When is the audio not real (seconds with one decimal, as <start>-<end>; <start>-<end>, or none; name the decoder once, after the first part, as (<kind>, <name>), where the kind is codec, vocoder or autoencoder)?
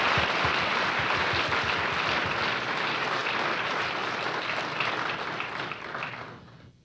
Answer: none